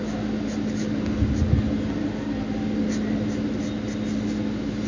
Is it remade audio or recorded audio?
recorded